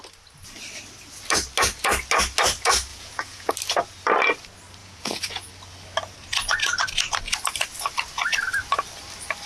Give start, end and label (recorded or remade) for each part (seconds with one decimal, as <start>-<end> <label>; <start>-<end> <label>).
0.0-2.9 recorded; 2.9-3.5 remade; 3.5-4.8 recorded; 4.8-5.5 remade; 5.5-9.5 recorded